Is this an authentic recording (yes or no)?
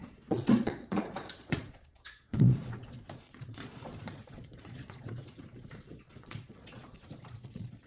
no